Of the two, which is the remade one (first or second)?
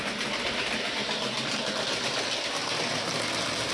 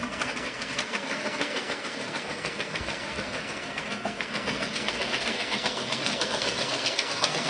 second